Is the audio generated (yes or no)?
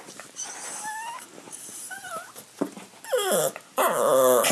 no